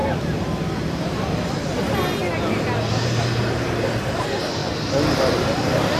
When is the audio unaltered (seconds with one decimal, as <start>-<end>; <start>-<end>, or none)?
0.0-0.9; 2.2-2.9; 4.6-5.4